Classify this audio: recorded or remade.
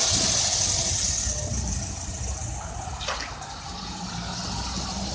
recorded